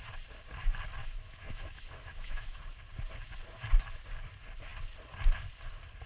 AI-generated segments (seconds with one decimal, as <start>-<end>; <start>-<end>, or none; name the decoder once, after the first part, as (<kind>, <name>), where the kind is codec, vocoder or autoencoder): 1.0-2.6 (autoencoder, DAC-VAE)